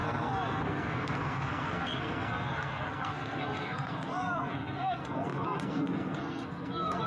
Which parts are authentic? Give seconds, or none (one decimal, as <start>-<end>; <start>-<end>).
none